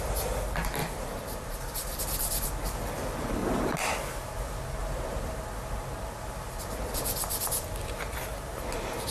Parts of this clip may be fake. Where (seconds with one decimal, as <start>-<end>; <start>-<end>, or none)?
0.8-2.0; 4.8-5.4